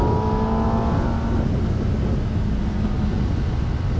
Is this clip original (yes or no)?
yes